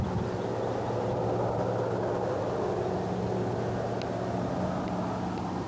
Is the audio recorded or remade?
recorded